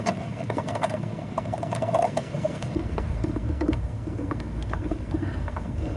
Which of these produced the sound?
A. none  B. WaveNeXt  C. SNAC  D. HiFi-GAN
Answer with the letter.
C